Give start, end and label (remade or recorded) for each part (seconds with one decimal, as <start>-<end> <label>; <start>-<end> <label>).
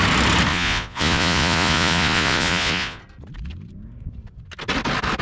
0.0-0.5 recorded; 0.5-3.0 remade; 3.0-5.2 recorded